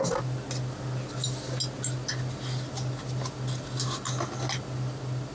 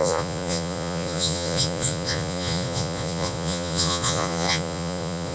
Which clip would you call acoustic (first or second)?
first